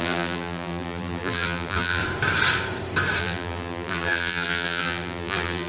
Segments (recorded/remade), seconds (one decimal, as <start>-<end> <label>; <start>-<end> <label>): 0.0-2.0 remade; 2.0-3.2 recorded; 3.2-5.7 remade